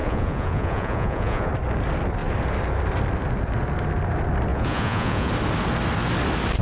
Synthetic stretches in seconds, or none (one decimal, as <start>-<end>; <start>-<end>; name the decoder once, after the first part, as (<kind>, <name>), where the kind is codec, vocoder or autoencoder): 0.0-1.5 (vocoder, Vocos); 4.5-5.3